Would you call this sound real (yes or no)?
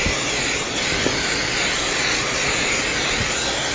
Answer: yes